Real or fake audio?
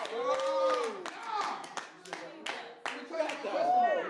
real